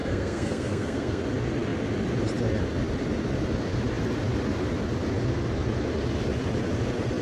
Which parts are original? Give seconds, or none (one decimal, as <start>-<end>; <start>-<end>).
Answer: 1.2-7.2